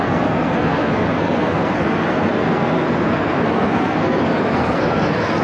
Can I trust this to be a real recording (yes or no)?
no